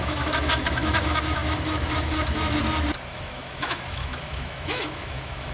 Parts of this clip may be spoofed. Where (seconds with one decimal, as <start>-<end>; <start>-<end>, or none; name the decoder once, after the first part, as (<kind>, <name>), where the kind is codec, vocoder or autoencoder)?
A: 0.0-2.6 (autoencoder, DAC-VAE); 3.1-5.5